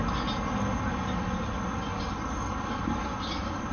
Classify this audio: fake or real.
real